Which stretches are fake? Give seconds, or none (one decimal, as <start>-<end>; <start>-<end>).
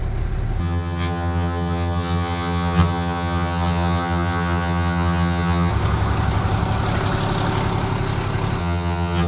0.6-5.7; 8.6-9.3